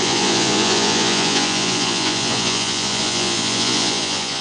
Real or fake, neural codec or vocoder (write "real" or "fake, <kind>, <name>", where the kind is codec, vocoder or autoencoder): fake, vocoder, Vocos